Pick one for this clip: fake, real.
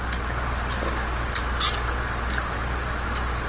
real